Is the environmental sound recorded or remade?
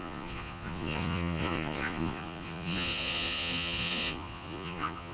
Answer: remade